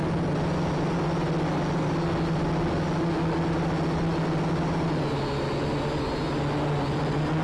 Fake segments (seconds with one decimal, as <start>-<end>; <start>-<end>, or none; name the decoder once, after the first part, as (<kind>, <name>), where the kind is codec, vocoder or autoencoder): none